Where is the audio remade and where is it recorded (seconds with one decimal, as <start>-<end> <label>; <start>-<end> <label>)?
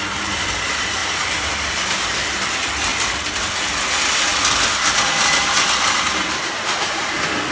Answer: 0.0-1.0 recorded; 1.0-2.5 remade; 2.5-2.9 recorded; 2.9-3.8 remade; 3.8-7.5 recorded